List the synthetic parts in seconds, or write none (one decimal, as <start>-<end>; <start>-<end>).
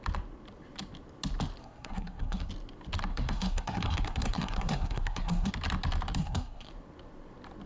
1.6-2.5; 3.1-5.5; 6.2-6.7